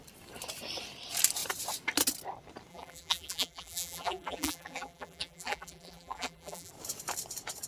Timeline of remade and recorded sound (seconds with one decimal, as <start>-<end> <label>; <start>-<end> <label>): 0.0-2.7 recorded; 2.7-6.7 remade; 6.7-7.7 recorded